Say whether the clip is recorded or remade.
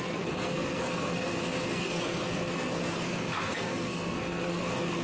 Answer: remade